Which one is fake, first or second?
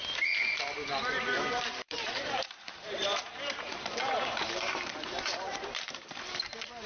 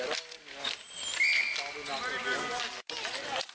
first